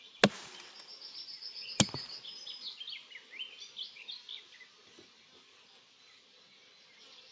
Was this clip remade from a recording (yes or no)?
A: no